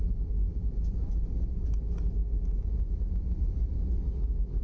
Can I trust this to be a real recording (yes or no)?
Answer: yes